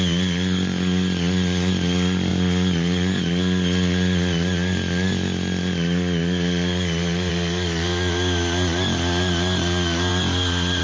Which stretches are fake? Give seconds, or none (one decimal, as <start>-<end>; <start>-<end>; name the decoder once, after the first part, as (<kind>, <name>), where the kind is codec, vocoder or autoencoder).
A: none